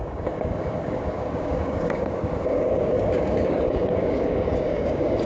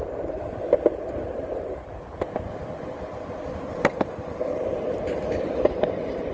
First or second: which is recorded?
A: second